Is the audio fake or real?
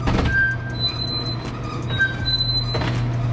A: real